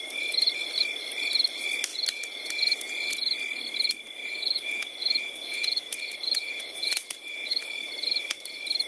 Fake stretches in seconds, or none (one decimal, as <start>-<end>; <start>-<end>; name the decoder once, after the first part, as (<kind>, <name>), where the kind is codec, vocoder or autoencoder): 1.9-3.4 (vocoder, Vocos); 4.2-7.5